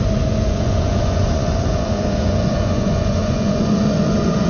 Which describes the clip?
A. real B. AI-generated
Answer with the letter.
B